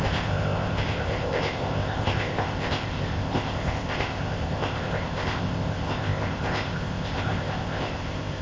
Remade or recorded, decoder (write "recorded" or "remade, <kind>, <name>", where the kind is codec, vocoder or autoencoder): remade, codec, ZipCodec